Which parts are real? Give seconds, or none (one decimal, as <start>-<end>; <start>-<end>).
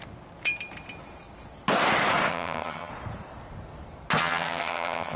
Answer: 0.0-2.3; 2.9-4.2